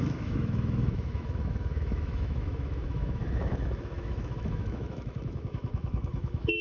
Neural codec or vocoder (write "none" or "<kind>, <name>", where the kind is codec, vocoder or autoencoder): autoencoder, DAC-VAE